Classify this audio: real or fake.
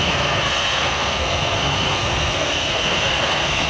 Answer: fake